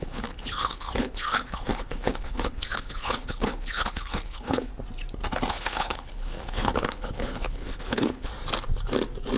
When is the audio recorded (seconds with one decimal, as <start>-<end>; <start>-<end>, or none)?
4.7-5.5; 8.3-9.4